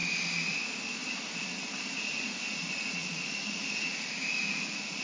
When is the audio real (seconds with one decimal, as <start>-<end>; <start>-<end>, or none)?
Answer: 0.0-0.5; 1.0-2.0